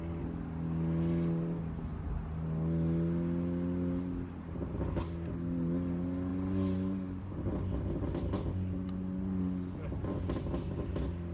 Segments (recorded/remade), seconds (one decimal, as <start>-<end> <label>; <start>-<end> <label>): 0.0-11.3 recorded